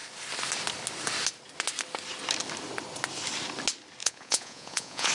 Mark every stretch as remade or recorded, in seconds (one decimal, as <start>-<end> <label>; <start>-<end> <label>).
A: 0.0-4.0 recorded; 4.0-5.1 remade